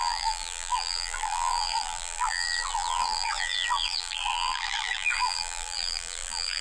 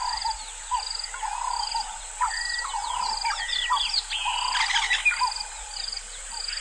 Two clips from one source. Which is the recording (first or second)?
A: second